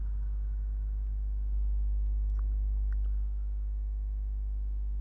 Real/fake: real